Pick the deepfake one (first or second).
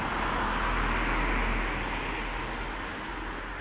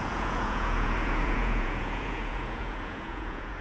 second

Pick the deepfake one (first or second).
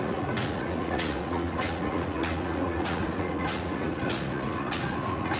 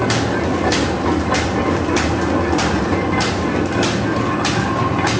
first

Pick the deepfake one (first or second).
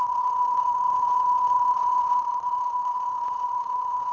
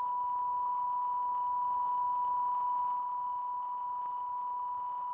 first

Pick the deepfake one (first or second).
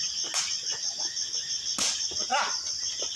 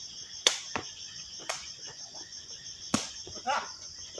second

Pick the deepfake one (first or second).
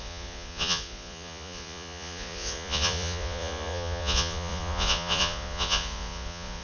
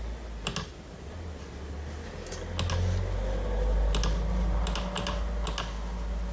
first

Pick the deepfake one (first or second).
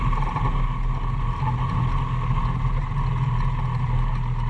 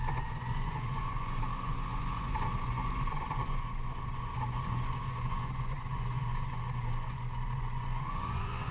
second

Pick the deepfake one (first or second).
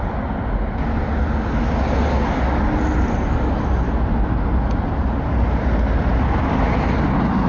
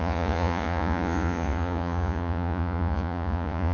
second